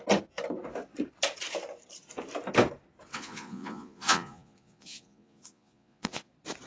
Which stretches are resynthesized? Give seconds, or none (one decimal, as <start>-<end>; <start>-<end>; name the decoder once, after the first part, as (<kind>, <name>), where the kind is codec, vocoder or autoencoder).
3.1-6.3 (vocoder, Vocos)